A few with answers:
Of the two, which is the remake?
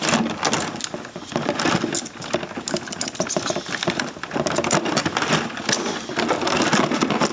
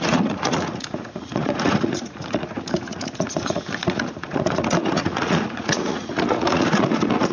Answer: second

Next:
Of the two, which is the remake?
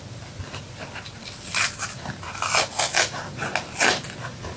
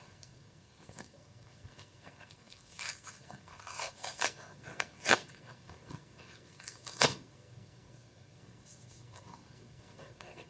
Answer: second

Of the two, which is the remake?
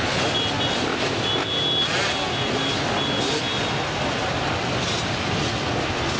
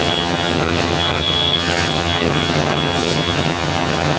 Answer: second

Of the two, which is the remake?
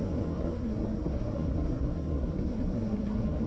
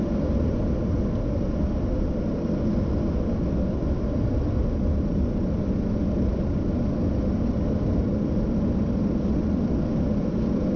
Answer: first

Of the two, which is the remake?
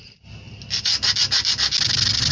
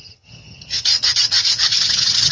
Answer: second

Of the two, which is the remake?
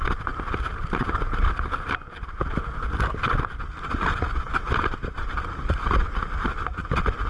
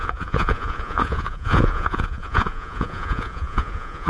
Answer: second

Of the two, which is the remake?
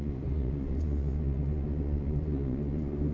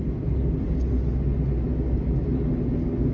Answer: first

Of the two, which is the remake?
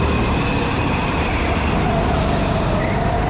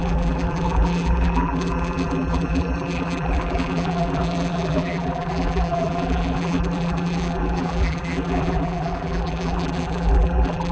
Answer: second